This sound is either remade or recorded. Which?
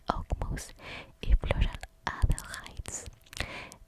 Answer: recorded